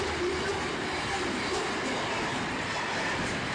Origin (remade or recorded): recorded